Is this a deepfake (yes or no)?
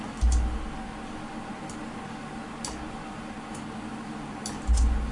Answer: no